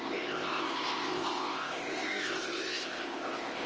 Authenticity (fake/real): fake